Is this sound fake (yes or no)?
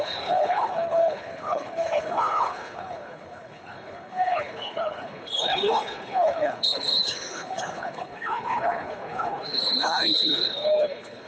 yes